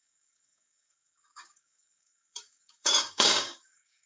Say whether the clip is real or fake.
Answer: fake